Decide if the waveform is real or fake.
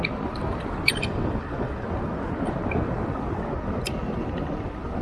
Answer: real